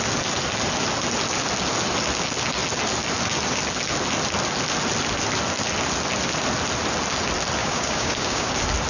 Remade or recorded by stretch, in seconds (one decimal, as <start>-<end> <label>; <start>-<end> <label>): 0.0-7.6 recorded; 7.6-8.5 remade; 8.5-8.9 recorded